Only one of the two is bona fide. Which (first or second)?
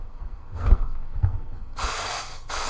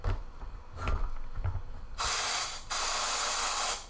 second